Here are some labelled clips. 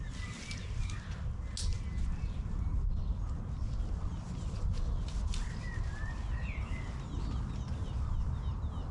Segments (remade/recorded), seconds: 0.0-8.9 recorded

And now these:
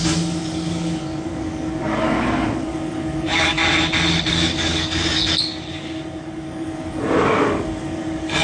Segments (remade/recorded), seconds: 0.0-3.6 remade; 3.6-4.3 recorded; 4.3-5.2 remade; 5.2-5.7 recorded; 5.7-8.4 remade